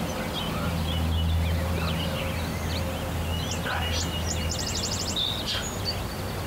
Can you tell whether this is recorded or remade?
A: recorded